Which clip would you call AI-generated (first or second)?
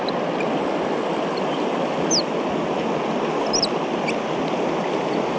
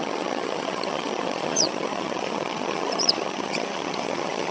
second